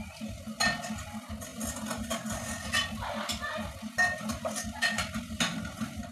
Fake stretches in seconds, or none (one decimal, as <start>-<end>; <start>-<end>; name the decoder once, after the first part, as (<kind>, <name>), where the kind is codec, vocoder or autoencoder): none